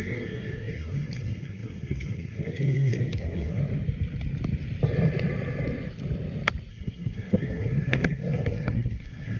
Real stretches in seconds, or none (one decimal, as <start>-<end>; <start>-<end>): 3.6-6.7